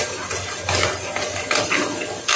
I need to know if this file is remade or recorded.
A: recorded